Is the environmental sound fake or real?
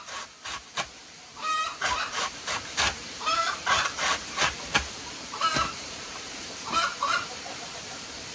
fake